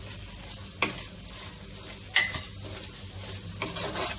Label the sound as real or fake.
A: real